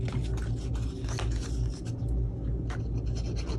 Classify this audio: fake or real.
real